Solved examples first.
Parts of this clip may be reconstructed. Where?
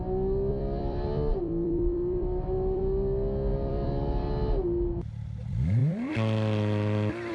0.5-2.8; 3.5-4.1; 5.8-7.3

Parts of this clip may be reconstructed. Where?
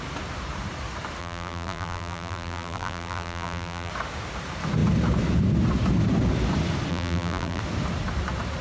1.2-3.9; 6.9-7.6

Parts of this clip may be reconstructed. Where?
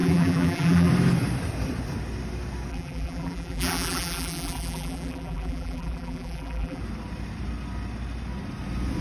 0.0-0.9; 2.7-6.8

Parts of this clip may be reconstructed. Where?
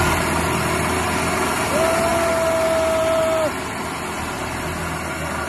none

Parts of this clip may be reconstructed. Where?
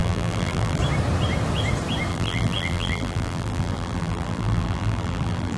0.0-0.8; 2.1-5.6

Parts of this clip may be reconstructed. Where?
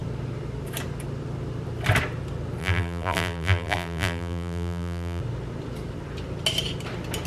2.6-5.2